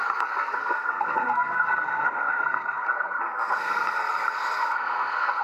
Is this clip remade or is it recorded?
remade